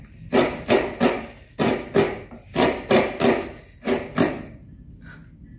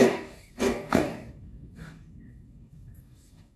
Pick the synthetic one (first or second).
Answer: second